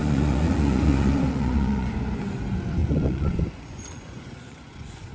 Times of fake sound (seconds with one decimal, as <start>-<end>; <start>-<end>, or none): 0.0-2.2; 2.8-5.1